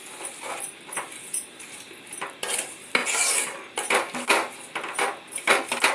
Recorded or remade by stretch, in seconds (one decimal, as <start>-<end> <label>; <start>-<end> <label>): 0.0-5.9 recorded